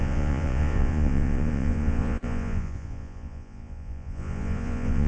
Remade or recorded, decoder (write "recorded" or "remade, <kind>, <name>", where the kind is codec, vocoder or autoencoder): remade, vocoder, Vocos